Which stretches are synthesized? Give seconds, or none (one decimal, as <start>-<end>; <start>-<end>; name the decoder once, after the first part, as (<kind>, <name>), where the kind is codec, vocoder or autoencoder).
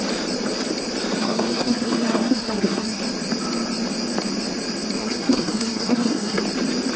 1.2-3.0 (codec, SNAC); 5.0-6.4